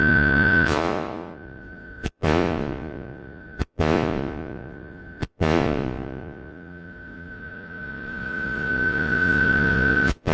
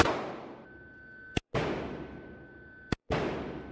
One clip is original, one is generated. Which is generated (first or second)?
first